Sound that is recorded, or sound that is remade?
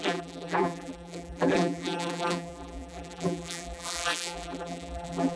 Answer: remade